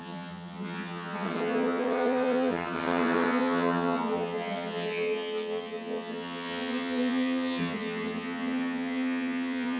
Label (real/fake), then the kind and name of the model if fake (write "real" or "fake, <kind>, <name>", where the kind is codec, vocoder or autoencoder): fake, vocoder, HiFi-GAN